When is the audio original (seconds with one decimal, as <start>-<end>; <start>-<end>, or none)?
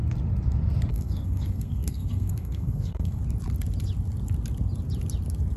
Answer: 0.0-0.9; 3.2-5.6